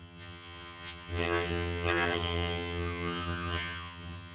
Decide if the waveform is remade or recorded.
remade